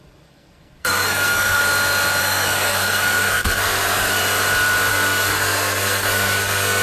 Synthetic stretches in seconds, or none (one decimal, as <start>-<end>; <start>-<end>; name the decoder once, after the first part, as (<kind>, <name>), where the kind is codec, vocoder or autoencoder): 0.0-1.6 (codec, SNAC); 2.2-4.2; 4.9-6.8